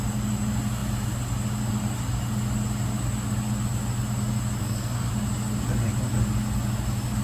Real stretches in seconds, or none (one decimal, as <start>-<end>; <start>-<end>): 0.0-4.6; 5.1-7.2